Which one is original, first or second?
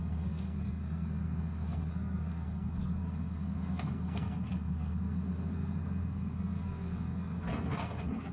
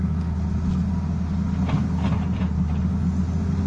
second